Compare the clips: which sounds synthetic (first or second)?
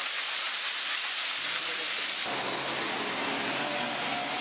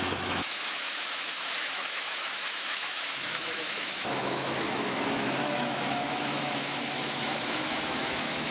second